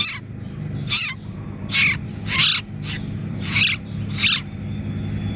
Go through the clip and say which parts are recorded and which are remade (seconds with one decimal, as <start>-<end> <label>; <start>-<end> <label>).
0.0-1.0 recorded; 1.0-2.4 remade; 2.4-3.2 recorded; 3.2-4.8 remade; 4.8-5.4 recorded